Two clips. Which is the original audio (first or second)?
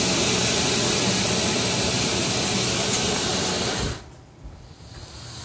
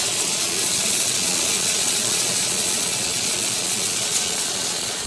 first